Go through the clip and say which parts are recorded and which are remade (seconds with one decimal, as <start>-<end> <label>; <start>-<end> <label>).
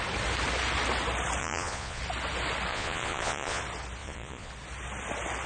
0.0-1.4 recorded; 1.4-2.0 remade; 2.0-2.7 recorded; 2.7-3.6 remade; 3.6-4.0 recorded; 4.0-4.5 remade; 4.5-5.5 recorded